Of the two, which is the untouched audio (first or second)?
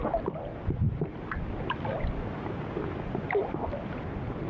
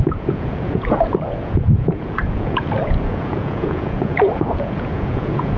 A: first